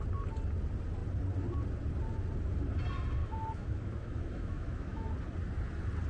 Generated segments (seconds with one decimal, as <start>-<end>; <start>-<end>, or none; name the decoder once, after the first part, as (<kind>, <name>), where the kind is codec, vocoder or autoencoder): 3.2-5.1 (autoencoder, DAC-VAE)